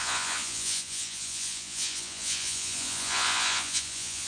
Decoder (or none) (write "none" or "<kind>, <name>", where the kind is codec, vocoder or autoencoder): vocoder, Vocos